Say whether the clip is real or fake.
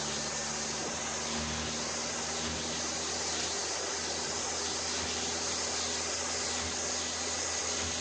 real